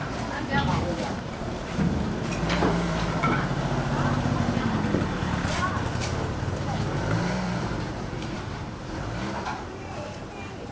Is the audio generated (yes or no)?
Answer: yes